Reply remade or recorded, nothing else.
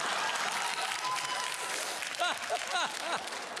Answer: recorded